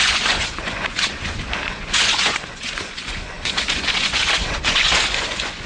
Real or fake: fake